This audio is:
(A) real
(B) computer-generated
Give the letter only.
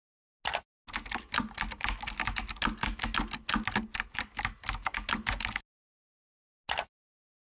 A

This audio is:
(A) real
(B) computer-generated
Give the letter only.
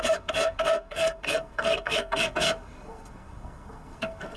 B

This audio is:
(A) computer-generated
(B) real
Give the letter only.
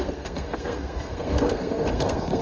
A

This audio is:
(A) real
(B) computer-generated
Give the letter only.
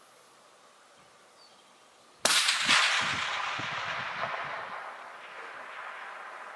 A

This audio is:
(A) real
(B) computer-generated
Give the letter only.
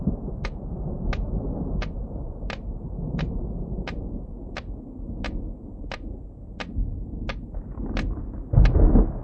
A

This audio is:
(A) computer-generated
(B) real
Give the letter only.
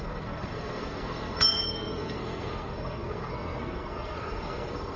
A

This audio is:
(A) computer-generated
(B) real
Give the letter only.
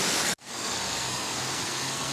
A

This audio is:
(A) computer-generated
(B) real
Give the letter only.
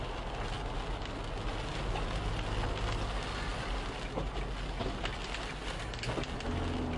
B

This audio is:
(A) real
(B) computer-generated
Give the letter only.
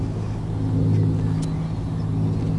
A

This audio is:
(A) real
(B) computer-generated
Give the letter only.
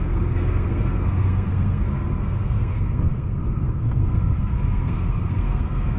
B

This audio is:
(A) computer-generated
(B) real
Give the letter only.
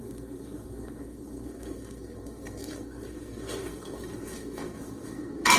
A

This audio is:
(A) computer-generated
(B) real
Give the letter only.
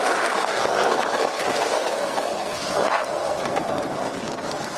A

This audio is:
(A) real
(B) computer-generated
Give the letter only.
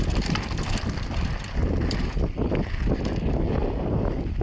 A